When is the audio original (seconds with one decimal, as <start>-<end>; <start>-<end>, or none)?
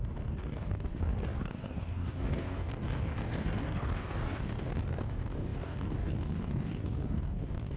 none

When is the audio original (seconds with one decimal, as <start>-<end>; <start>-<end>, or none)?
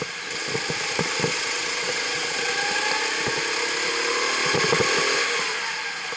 0.0-1.3; 2.5-6.2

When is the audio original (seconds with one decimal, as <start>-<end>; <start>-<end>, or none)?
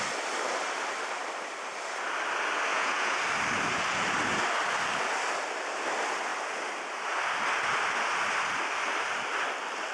0.0-2.7; 3.2-9.9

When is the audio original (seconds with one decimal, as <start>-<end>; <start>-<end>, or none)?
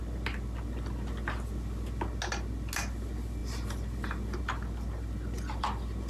0.0-6.1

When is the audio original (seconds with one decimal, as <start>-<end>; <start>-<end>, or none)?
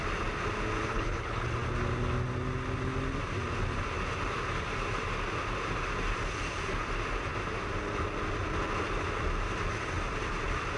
0.0-0.9; 1.5-10.8